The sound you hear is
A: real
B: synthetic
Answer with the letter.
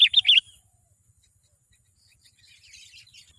A